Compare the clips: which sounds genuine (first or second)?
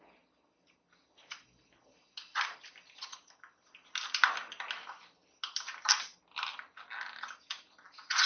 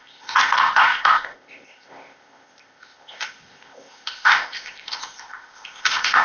first